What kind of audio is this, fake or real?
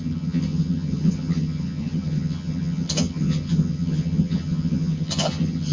fake